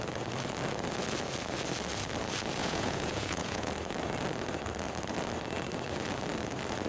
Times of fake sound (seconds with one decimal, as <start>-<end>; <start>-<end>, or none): 2.6-3.7